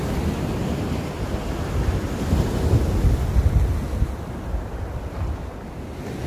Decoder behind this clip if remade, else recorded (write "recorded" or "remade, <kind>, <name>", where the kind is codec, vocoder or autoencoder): recorded